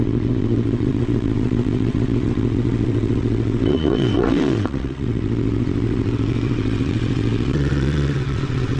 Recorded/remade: remade